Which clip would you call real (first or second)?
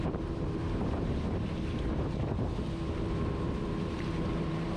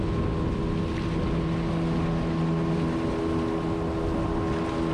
second